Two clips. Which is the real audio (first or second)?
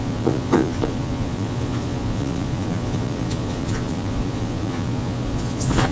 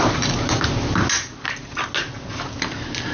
second